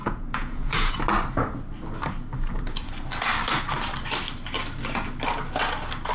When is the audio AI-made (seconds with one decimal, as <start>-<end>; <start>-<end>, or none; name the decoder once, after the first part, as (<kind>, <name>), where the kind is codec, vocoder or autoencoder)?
0.0-0.9 (vocoder, Vocos)